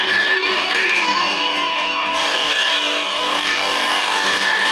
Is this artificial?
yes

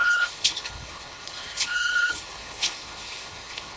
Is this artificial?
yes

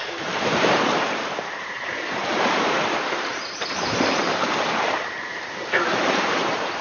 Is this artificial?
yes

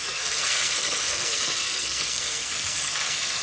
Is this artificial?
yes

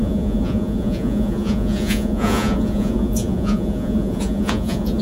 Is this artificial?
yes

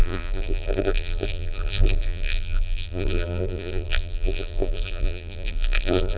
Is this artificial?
yes